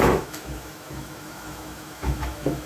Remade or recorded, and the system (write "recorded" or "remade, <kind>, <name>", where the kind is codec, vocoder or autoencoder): remade, autoencoder, DAC-VAE